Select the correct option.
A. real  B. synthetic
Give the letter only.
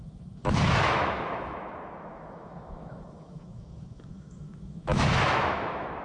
B